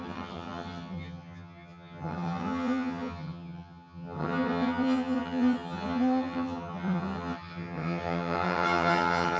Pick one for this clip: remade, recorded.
remade